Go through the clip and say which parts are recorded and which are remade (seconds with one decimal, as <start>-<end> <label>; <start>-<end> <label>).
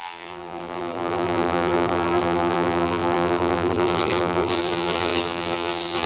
0.0-6.1 remade